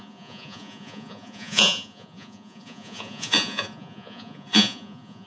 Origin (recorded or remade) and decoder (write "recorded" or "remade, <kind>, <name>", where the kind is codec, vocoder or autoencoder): remade, vocoder, Vocos